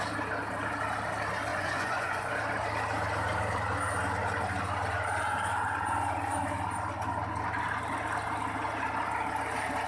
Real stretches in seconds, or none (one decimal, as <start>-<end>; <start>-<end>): 0.0-1.5; 2.3-9.9